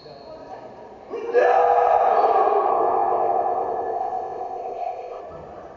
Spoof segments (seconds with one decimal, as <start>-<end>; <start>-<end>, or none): 2.7-5.2

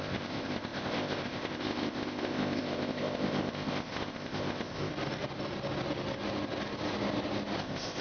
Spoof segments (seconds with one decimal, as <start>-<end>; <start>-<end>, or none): 0.0-4.9; 7.6-8.0